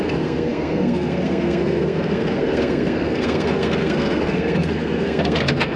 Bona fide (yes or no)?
no